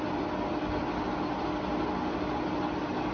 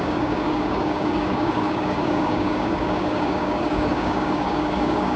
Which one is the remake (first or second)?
second